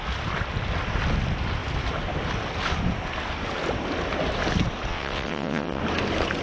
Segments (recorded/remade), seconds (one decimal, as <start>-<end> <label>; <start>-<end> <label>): 0.0-4.9 recorded; 4.9-5.8 remade; 5.8-6.4 recorded